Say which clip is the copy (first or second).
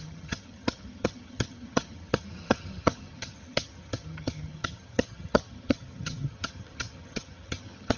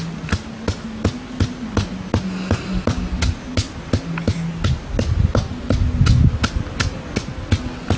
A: first